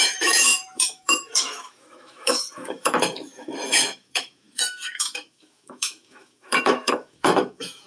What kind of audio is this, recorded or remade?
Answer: remade